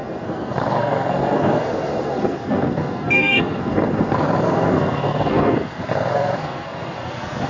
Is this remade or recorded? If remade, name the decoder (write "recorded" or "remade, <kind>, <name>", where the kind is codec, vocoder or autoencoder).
remade, codec, SNAC